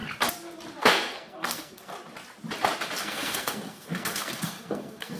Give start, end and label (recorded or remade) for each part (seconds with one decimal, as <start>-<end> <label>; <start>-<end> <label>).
0.0-0.8 recorded; 0.8-1.9 remade; 1.9-3.0 recorded; 3.0-5.2 remade